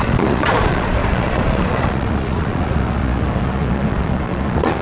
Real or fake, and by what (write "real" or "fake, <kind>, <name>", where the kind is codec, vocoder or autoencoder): fake, vocoder, Vocos